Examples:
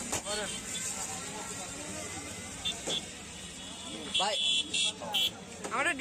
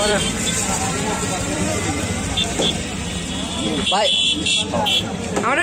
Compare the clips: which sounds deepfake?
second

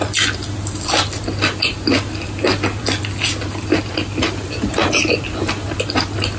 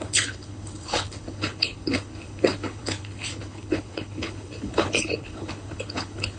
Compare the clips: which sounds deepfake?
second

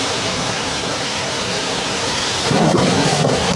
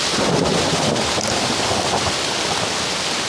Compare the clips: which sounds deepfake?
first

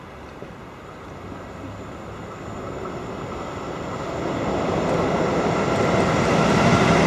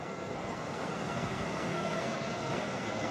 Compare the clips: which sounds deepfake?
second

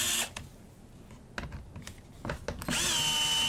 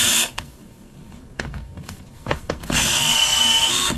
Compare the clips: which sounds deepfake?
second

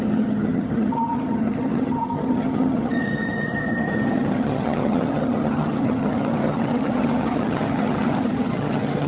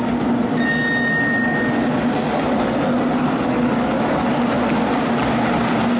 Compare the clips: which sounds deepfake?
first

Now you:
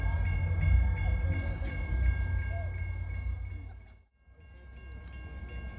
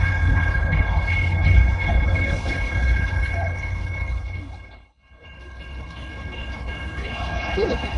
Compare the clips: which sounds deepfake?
second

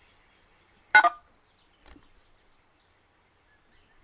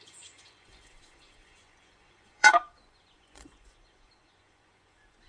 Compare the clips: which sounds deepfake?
second